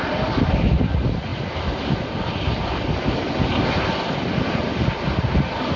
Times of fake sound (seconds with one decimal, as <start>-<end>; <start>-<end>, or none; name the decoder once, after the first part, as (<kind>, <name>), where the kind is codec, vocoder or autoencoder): none